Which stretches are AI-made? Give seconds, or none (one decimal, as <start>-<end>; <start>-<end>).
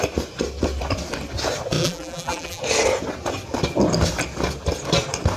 1.8-2.6